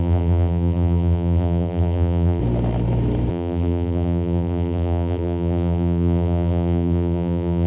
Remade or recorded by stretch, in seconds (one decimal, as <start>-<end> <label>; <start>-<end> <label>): 0.0-2.4 remade; 2.4-3.3 recorded; 3.3-7.7 remade